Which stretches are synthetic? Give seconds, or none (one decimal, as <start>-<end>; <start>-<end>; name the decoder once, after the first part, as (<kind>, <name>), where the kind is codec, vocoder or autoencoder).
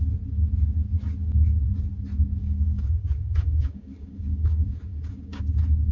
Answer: 2.4-5.4 (codec, DAC)